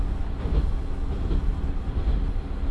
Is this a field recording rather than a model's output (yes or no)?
yes